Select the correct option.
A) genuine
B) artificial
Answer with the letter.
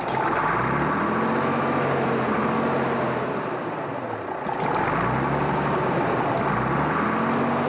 A